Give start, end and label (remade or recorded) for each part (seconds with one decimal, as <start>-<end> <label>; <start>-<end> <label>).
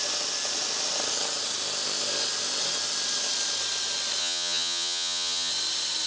0.0-4.2 recorded; 4.2-5.5 remade; 5.5-6.1 recorded